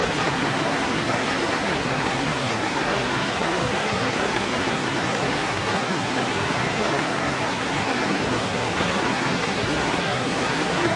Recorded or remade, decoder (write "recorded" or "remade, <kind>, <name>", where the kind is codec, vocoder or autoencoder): remade, codec, SNAC